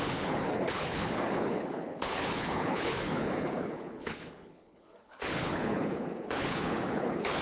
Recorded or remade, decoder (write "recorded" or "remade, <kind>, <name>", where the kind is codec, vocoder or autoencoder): remade, codec, HILCodec